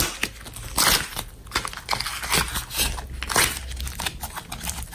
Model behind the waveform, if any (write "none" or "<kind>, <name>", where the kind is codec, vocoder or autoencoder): none